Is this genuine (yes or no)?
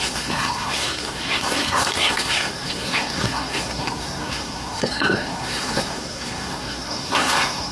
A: no